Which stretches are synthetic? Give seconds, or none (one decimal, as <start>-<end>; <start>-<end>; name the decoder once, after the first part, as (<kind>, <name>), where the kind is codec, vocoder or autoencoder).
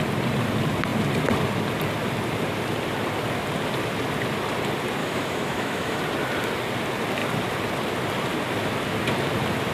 5.0-6.0 (autoencoder, DAC-VAE)